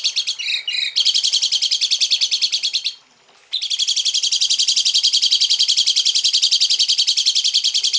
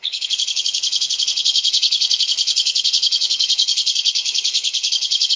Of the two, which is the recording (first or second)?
first